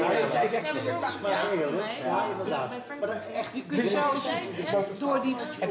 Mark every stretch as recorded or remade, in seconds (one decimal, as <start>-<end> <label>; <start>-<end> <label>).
0.0-5.7 recorded

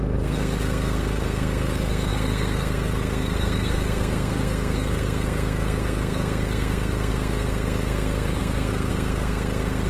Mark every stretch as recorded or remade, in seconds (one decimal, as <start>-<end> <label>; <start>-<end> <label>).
0.0-9.9 remade